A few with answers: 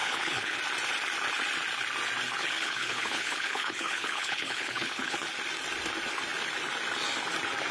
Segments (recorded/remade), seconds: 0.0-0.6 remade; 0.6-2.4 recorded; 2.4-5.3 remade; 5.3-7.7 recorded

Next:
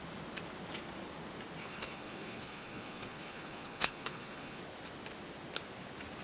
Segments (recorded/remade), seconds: 0.0-1.6 recorded; 1.6-4.6 remade; 4.6-6.2 recorded

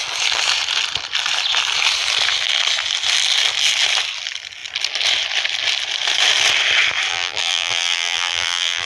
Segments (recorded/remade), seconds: 0.0-7.1 recorded; 7.1-8.9 remade

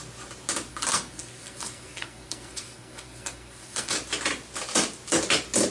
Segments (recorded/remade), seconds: 0.0-0.7 recorded; 0.7-3.9 remade; 3.9-5.7 recorded

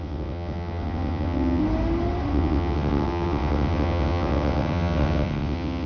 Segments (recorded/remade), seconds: 0.0-1.6 remade; 1.6-2.3 recorded; 2.3-5.9 remade

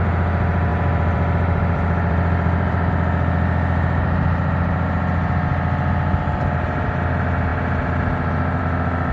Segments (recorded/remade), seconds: 0.0-0.7 recorded; 0.7-2.9 remade; 2.9-9.1 recorded